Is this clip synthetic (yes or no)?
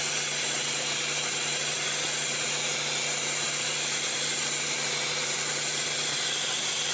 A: no